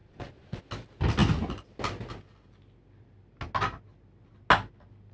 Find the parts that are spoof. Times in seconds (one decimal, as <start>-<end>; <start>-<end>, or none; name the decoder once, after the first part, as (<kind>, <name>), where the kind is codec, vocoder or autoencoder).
0.0-0.6 (vocoder, Vocos)